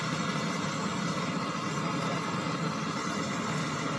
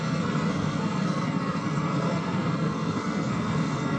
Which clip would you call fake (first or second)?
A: second